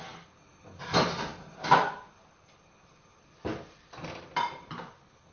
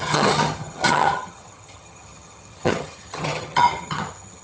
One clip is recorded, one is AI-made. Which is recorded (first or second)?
first